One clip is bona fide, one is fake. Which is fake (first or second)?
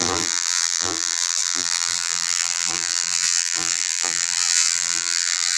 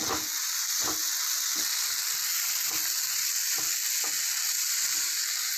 first